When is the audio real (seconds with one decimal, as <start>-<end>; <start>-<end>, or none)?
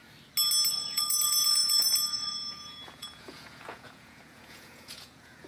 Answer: 0.0-0.7